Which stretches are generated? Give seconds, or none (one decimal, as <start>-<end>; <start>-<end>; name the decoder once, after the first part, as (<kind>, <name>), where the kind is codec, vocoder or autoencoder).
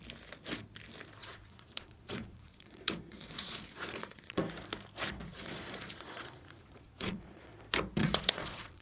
1.2-4.4 (vocoder, Vocos); 5.3-7.5; 8.0-8.8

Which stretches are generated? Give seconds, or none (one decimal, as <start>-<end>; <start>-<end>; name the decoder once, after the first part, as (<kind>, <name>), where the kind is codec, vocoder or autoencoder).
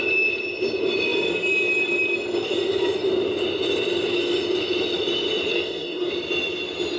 5.5-6.1 (codec, DAC)